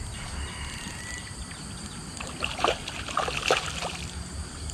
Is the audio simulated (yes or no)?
no